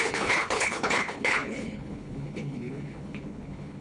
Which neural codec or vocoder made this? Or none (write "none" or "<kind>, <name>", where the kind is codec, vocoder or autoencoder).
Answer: codec, HILCodec